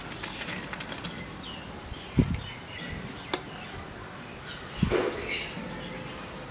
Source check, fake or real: real